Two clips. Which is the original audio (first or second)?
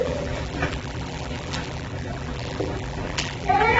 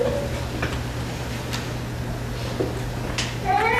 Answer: second